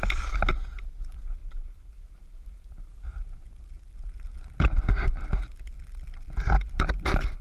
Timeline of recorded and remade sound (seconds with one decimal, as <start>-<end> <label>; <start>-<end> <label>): 0.0-1.4 recorded; 1.4-1.9 remade; 1.9-7.4 recorded